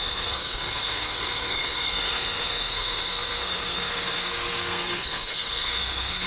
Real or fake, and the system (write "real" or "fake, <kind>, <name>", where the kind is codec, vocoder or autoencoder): fake, codec, SNAC